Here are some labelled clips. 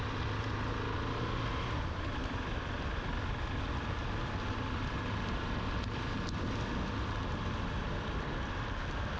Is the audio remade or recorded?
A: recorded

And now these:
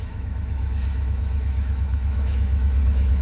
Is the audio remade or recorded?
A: remade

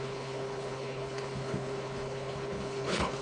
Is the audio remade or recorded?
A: remade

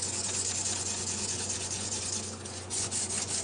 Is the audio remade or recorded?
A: remade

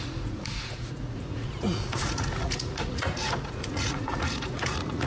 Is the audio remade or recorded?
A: remade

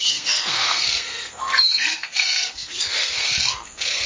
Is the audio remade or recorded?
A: remade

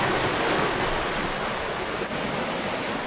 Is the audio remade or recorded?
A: recorded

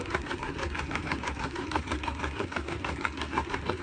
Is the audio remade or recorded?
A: remade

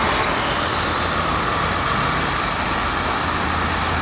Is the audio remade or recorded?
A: recorded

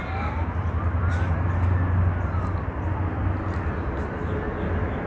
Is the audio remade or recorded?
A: recorded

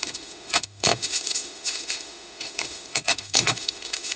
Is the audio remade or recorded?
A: remade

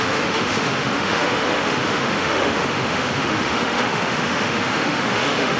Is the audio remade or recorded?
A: remade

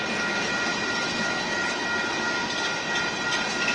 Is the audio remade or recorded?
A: recorded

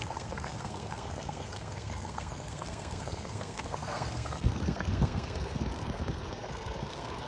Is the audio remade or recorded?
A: remade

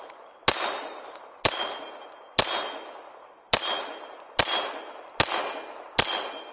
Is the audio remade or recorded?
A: recorded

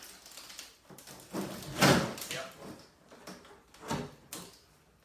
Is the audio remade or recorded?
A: recorded